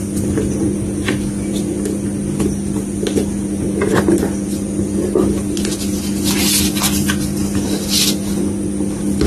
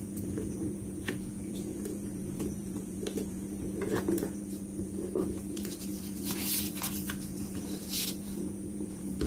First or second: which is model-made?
second